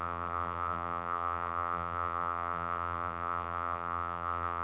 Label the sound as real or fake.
fake